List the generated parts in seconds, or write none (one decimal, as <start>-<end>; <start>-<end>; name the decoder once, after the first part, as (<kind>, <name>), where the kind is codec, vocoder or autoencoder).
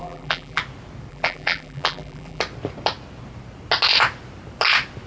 0.0-0.6 (vocoder, BigVGAN v2); 1.1-2.4